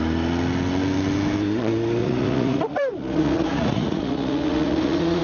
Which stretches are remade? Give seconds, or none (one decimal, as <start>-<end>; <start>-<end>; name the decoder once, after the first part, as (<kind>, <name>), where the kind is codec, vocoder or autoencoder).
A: 2.0-5.2 (vocoder, Vocos)